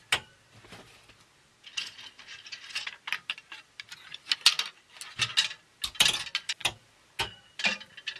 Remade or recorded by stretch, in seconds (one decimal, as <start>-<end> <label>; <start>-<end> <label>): 0.0-8.2 recorded